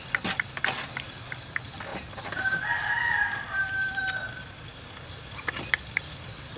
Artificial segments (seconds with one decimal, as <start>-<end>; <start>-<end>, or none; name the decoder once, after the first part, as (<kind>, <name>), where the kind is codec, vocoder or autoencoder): 1.9-4.0 (vocoder, BigVGAN v2); 4.7-6.6